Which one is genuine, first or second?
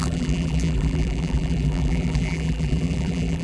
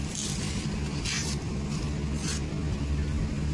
second